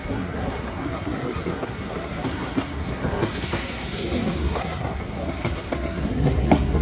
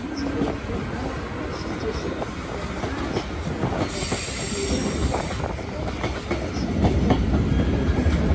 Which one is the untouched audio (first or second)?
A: second